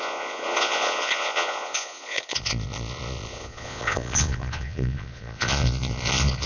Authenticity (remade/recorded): remade